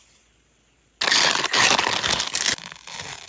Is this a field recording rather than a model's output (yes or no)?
yes